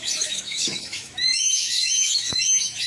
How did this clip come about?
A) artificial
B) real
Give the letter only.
A